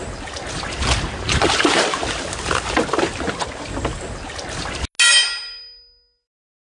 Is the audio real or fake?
real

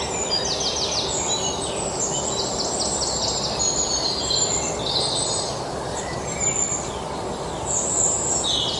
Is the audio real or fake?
real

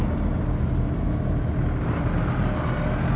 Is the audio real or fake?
real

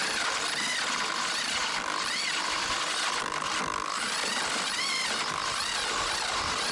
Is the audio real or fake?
real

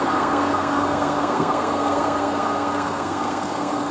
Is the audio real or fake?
fake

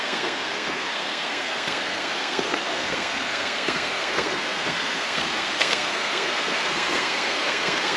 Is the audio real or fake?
fake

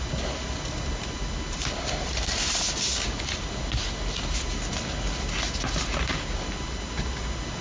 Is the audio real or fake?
real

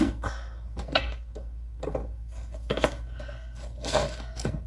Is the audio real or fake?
fake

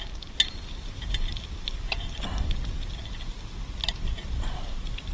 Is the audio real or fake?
real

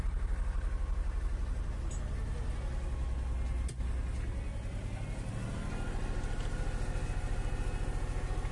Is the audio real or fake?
real